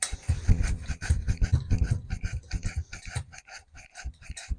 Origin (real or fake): real